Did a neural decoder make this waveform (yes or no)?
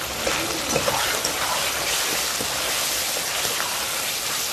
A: no